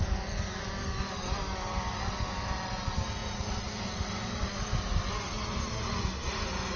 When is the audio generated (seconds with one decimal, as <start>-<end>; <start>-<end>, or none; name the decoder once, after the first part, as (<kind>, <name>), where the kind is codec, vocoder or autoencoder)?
3.2-4.2 (vocoder, BigVGAN v2)